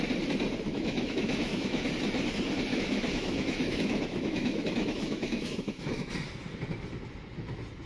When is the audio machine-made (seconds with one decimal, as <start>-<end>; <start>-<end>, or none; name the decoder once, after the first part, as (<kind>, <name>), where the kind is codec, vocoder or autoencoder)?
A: 0.7-1.9 (autoencoder, DAC-VAE); 2.7-6.1